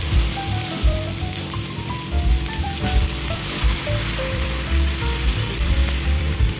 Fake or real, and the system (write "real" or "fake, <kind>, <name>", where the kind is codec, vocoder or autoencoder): fake, vocoder, BigVGAN v2